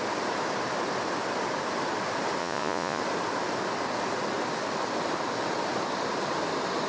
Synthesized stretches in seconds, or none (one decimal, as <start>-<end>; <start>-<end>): 2.4-3.0